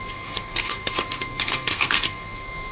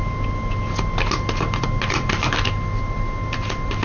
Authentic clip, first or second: second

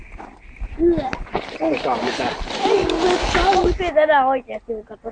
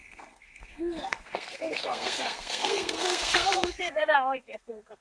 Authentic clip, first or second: first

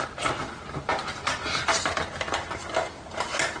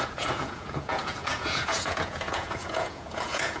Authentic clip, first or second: first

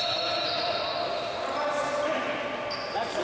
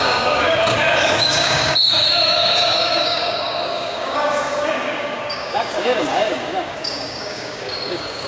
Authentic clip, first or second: first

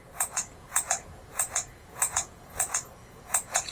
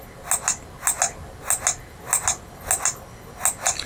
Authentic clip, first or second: second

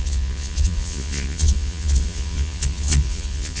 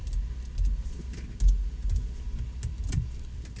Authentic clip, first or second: second